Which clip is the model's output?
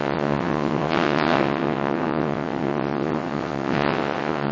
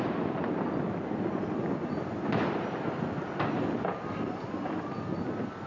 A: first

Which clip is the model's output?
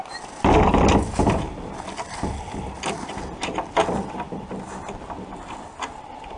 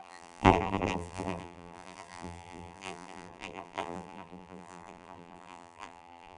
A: second